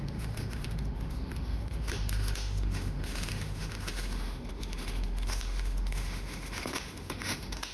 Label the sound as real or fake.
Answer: fake